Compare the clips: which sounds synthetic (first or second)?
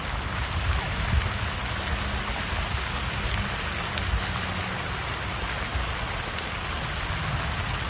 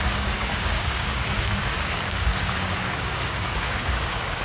second